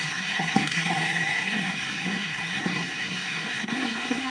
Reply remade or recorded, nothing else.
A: remade